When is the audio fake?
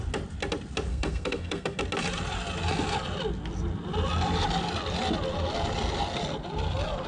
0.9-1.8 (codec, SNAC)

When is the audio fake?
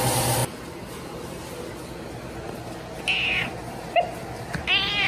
none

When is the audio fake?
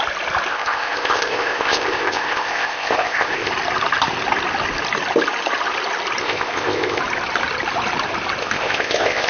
0.5-3.5 (codec, ZipCodec); 6.2-7.0; 8.4-9.3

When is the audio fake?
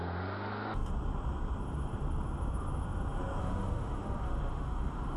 3.4-5.2 (autoencoder, DAC-VAE)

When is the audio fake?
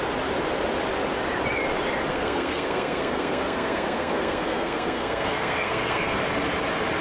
2.1-6.2 (codec, SNAC)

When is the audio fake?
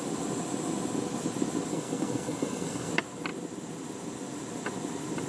1.7-2.9 (codec, SNAC)